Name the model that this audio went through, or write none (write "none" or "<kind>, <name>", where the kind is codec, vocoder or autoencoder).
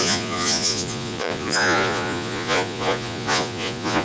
vocoder, Vocos